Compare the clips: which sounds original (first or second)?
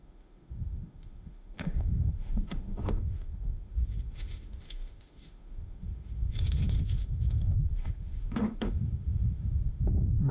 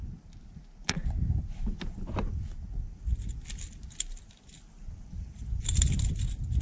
second